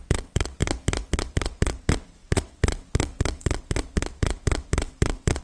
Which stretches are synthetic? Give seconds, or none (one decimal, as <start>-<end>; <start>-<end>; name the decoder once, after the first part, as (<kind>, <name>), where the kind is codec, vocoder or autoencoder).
0.0-0.6 (vocoder, WaveNeXt); 1.1-5.4